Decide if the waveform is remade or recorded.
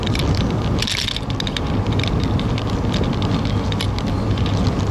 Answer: recorded